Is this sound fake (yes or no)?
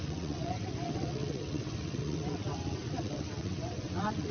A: yes